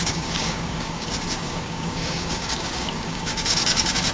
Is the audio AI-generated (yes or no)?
yes